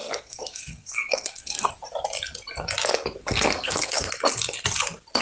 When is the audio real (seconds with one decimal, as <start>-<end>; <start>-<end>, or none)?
1.7-3.2; 4.1-5.2